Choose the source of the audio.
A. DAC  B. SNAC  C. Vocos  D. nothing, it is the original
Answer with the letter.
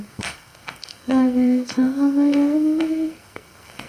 B